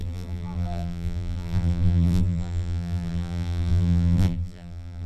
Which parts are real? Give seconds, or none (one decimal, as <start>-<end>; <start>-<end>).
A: none